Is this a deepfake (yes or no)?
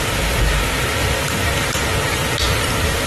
yes